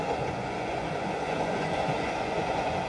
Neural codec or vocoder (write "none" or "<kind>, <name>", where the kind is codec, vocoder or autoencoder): vocoder, Vocos